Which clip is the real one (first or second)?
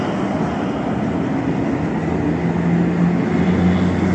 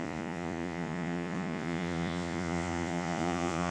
first